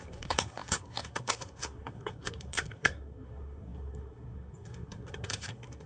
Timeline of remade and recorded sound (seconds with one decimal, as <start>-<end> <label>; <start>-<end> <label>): 0.0-5.9 remade